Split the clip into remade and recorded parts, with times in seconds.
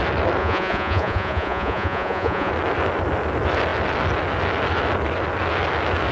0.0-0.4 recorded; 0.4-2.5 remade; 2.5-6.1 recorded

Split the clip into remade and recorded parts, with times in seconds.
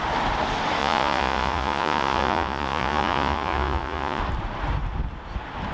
0.0-0.8 recorded; 0.8-4.2 remade; 4.2-5.7 recorded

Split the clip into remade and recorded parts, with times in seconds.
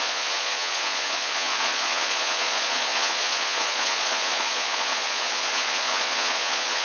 0.0-6.8 remade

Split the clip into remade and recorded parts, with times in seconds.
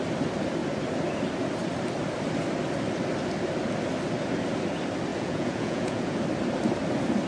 0.0-5.1 recorded; 5.1-6.2 remade; 6.2-7.3 recorded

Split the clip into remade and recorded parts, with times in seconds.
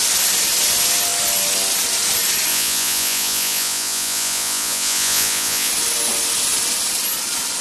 0.0-2.5 recorded; 2.5-5.7 remade; 5.7-7.6 recorded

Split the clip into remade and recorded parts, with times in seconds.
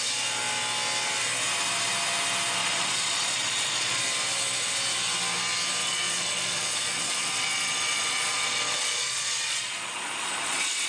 0.0-2.6 recorded; 2.6-4.0 remade; 4.0-5.8 recorded; 5.8-10.9 remade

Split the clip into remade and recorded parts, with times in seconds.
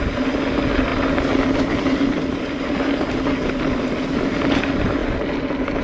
0.0-5.8 recorded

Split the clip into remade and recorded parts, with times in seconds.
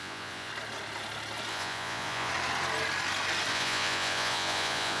0.0-0.5 remade; 0.5-1.5 recorded; 1.5-2.3 remade; 2.3-3.5 recorded; 3.5-5.0 remade